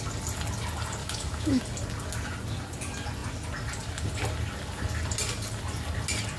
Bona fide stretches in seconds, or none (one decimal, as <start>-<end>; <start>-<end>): 0.0-1.0; 1.6-6.4